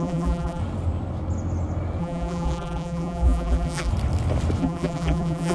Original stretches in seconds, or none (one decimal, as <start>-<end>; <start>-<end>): 0.6-2.0; 3.9-4.6